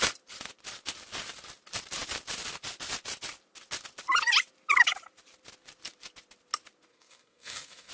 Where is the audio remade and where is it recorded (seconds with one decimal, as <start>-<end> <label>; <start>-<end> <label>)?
0.0-6.9 recorded; 6.9-7.9 remade

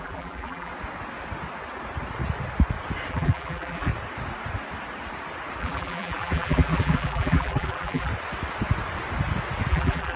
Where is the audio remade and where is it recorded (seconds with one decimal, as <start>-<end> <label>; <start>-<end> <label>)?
0.0-0.7 remade; 0.7-3.1 recorded; 3.1-3.9 remade; 3.9-5.6 recorded; 5.6-8.1 remade; 8.1-9.7 recorded; 9.7-10.2 remade